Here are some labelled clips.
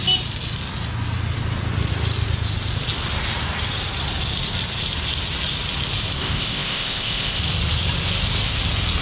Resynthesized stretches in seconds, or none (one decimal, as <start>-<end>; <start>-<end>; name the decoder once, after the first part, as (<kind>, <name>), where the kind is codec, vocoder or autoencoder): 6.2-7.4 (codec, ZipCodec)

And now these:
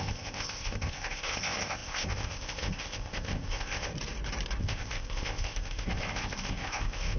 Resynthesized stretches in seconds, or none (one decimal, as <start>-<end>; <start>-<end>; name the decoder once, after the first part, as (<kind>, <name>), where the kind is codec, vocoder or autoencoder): 0.0-3.9 (codec, ZipCodec); 4.6-7.2

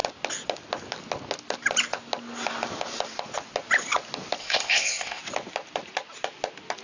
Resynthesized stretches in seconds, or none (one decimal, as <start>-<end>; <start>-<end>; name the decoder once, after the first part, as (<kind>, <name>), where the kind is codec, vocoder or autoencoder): 4.4-5.2 (codec, ZipCodec)

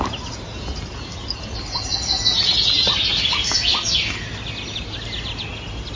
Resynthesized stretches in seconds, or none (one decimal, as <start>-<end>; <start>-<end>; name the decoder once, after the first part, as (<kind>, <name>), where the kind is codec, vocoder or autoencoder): none